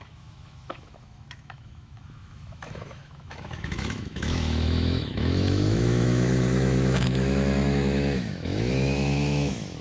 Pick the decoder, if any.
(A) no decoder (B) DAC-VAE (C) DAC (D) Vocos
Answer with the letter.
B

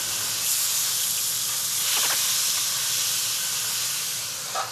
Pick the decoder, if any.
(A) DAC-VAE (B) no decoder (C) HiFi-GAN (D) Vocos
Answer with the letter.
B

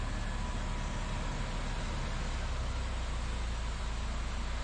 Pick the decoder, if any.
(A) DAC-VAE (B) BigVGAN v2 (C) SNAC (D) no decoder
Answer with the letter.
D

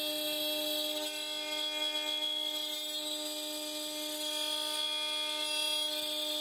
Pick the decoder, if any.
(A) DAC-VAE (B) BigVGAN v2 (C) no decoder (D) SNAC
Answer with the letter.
C